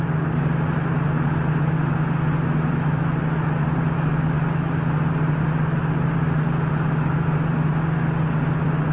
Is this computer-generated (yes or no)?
no